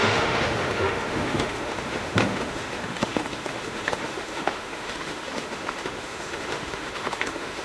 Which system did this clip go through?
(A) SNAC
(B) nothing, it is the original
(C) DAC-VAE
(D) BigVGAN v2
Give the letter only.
C